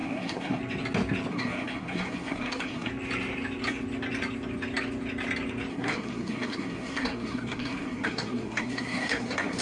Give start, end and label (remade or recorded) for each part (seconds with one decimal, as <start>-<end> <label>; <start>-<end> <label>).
0.0-0.6 remade; 0.6-1.3 recorded; 1.3-2.9 remade; 2.9-5.7 recorded; 5.7-9.6 remade